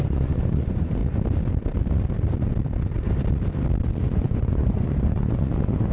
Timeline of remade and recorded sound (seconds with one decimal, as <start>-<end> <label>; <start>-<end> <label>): 0.0-1.0 remade; 1.0-4.1 recorded; 4.1-5.9 remade